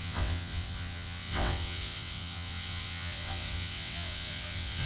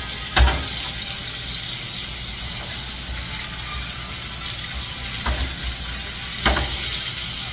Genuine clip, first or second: second